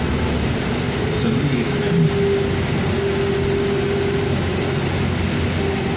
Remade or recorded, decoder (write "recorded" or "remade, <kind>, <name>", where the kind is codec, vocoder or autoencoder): recorded